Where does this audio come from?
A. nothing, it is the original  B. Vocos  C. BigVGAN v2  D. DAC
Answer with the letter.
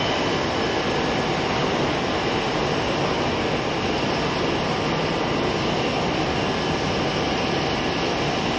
A